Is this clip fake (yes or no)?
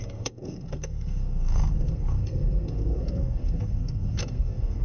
yes